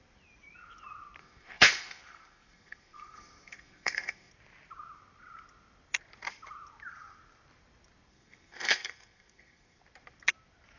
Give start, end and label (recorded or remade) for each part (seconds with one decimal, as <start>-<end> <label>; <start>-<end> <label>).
0.0-1.2 recorded; 1.2-4.3 remade; 4.3-8.1 recorded; 8.1-9.8 remade; 9.8-10.8 recorded